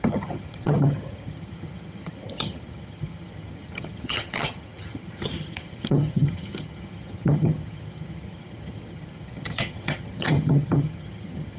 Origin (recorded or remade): remade